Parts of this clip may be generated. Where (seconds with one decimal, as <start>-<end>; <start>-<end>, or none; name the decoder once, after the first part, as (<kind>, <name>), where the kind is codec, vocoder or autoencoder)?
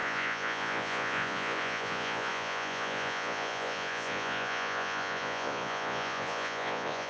0.0-7.1 (vocoder, Vocos)